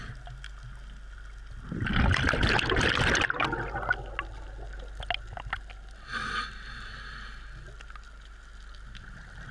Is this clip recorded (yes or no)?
yes